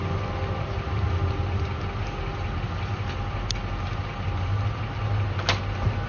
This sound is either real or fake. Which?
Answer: real